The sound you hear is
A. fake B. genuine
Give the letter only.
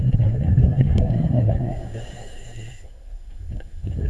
A